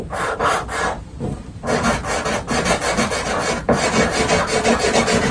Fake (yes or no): no